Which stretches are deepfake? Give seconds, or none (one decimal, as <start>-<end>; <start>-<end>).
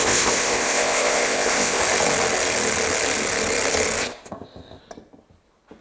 0.0-1.8; 4.0-4.8